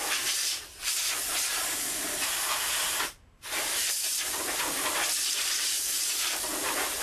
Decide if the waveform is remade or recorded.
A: remade